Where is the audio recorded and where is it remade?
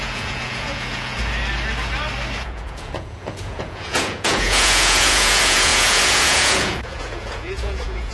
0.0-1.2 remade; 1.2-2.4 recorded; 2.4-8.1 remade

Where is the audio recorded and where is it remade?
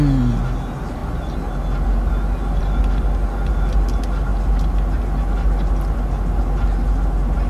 0.0-7.5 recorded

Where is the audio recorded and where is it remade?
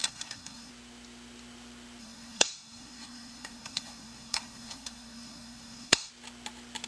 0.0-0.7 remade; 0.7-2.0 recorded; 2.0-6.1 remade; 6.1-6.9 recorded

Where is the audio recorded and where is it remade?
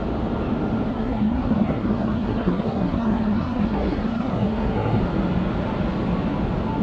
0.0-0.9 recorded; 0.9-5.0 remade; 5.0-6.8 recorded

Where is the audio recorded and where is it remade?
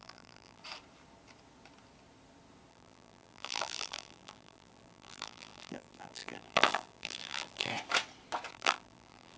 0.0-0.6 remade; 0.6-2.7 recorded; 2.7-7.7 remade; 7.7-8.5 recorded; 8.5-9.4 remade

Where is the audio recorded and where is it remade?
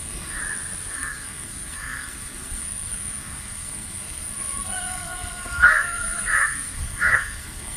0.0-0.4 remade; 0.4-0.9 recorded; 0.9-7.8 remade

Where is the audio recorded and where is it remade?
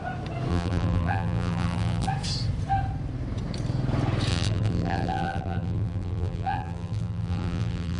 0.0-0.5 recorded; 0.5-2.1 remade; 2.1-4.3 recorded; 4.3-8.0 remade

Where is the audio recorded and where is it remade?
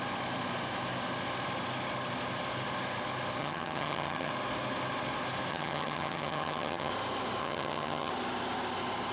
0.0-3.4 recorded; 3.4-4.3 remade; 4.3-5.5 recorded; 5.5-6.9 remade; 6.9-7.4 recorded; 7.4-8.1 remade; 8.1-9.1 recorded